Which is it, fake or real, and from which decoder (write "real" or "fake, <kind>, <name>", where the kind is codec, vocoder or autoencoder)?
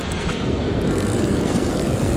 fake, codec, SNAC